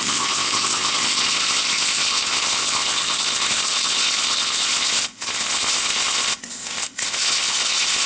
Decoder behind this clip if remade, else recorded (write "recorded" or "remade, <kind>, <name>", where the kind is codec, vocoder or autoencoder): remade, codec, ZipCodec